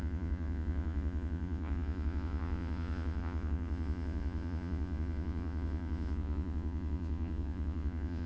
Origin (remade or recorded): remade